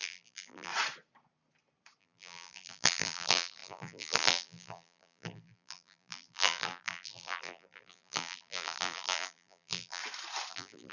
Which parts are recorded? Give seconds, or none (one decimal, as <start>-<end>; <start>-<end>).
0.7-2.0; 10.0-10.5